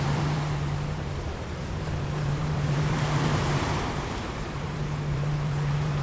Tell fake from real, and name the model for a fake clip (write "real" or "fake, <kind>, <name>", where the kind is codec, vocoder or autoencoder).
fake, vocoder, BigVGAN v2